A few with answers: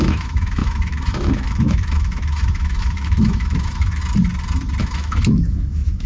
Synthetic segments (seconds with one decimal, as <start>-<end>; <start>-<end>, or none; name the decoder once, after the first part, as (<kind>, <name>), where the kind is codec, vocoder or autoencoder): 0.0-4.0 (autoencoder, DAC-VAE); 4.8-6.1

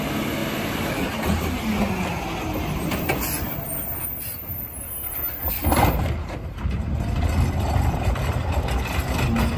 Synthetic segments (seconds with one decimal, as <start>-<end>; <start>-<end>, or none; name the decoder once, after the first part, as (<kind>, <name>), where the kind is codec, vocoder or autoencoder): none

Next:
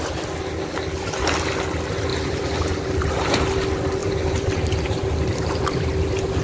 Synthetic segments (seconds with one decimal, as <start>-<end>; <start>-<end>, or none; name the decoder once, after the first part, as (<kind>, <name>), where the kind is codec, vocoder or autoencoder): 2.1-3.4 (vocoder, BigVGAN v2); 4.0-5.6

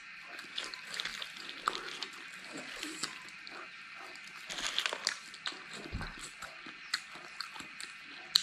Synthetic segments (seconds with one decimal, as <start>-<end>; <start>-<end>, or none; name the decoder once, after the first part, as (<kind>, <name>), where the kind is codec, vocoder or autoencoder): 0.0-1.1 (vocoder, BigVGAN v2); 2.6-3.0; 5.0-8.4

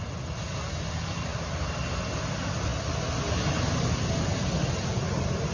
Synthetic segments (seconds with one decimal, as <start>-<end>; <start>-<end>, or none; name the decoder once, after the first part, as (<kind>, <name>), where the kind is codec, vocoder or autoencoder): none